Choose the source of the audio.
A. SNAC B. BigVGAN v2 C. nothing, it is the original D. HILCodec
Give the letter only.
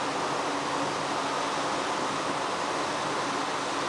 C